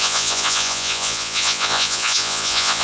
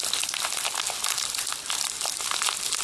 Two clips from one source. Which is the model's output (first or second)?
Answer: first